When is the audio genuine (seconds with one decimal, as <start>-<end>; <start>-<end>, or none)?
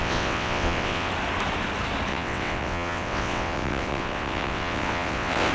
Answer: 1.1-2.1